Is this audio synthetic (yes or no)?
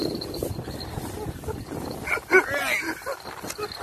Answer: no